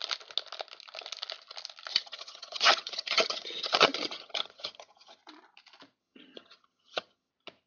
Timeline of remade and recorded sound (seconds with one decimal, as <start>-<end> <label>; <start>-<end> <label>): 0.0-1.9 recorded; 1.9-5.2 remade; 5.2-6.0 recorded; 6.0-7.3 remade; 7.3-7.7 recorded